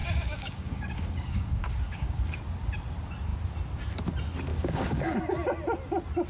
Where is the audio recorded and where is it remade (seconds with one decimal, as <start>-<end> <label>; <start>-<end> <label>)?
0.0-2.4 remade; 2.4-4.5 recorded; 4.5-5.2 remade; 5.2-6.3 recorded